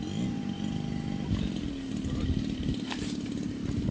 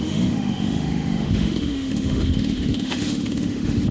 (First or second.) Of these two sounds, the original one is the first